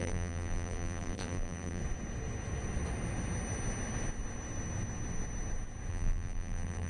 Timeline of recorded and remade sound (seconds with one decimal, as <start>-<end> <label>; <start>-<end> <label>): 0.0-1.8 remade; 1.8-5.9 recorded; 5.9-6.9 remade